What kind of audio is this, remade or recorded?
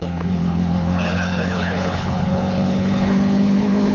remade